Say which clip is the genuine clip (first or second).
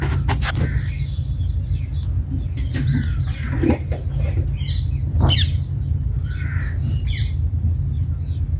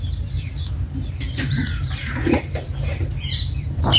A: first